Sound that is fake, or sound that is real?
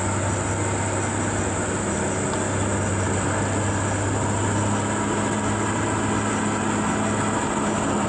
real